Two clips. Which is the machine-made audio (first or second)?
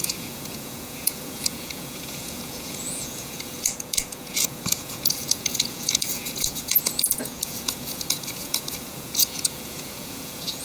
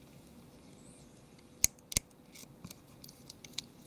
first